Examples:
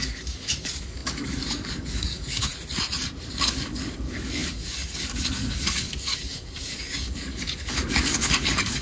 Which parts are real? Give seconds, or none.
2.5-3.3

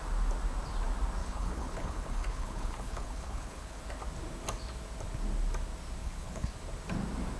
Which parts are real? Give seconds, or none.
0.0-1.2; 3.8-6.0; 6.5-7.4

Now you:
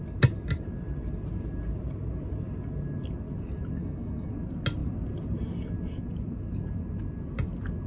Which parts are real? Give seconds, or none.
0.0-3.8; 4.3-7.9

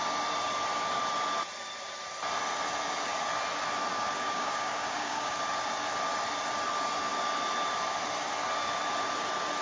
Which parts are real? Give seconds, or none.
0.0-3.9; 5.3-9.6

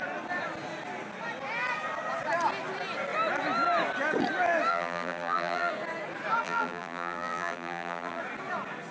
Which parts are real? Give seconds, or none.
0.0-4.7; 5.7-6.4; 8.2-8.9